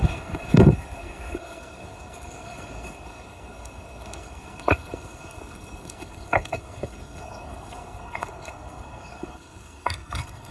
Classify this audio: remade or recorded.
remade